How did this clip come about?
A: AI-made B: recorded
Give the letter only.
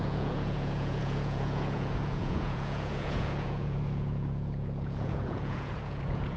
A